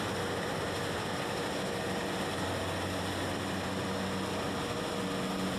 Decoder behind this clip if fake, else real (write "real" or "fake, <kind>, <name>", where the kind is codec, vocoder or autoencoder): real